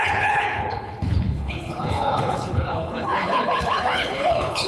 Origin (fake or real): fake